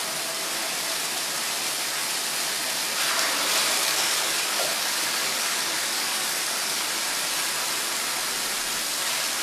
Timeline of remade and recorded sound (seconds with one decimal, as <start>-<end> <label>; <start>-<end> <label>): 0.0-3.8 recorded; 3.8-6.8 remade; 6.8-9.4 recorded